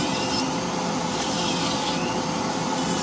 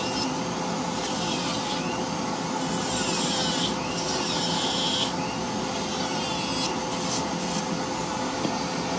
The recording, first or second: second